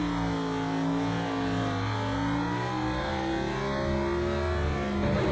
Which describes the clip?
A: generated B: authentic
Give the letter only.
B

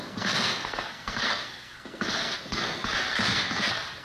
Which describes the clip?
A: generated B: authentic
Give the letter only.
A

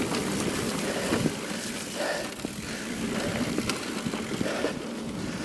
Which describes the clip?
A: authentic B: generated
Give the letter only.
A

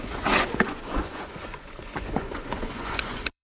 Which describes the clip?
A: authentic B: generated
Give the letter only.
B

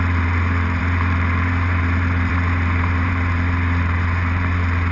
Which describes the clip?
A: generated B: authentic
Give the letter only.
A